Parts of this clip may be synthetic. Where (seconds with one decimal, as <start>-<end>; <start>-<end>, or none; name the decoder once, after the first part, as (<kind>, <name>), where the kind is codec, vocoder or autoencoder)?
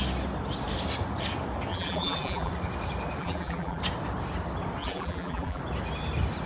1.7-2.5 (vocoder, BigVGAN v2); 3.2-3.8; 4.8-5.6